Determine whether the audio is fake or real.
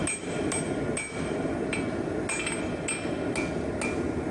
real